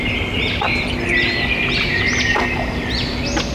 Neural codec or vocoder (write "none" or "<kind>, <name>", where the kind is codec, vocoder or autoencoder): none